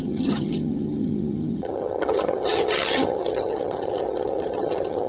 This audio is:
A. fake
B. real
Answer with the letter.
A